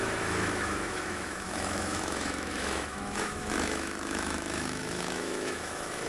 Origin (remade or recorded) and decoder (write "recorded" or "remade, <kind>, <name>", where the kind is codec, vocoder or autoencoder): remade, autoencoder, DAC-VAE